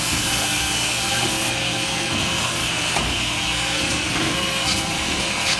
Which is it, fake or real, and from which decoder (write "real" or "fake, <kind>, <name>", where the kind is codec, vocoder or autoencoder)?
fake, codec, SNAC